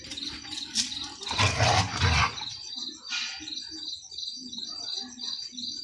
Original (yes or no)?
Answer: yes